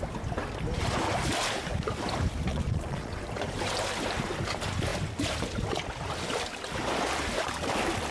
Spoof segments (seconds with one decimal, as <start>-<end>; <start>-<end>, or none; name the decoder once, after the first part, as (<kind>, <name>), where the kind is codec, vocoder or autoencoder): 2.5-3.2 (vocoder, Vocos)